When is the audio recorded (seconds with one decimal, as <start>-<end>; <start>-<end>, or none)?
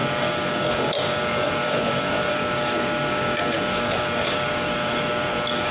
none